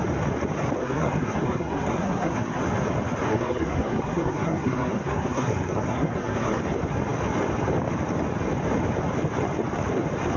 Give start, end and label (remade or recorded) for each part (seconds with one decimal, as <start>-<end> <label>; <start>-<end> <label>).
0.0-0.8 recorded; 0.8-2.6 remade; 2.6-3.3 recorded; 3.3-6.6 remade; 6.6-10.4 recorded